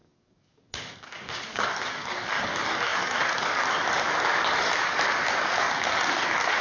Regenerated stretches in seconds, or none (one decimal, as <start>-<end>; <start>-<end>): 0.0-6.6